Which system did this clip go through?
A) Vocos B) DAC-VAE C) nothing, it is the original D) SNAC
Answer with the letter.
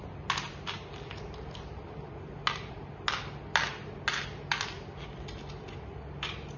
C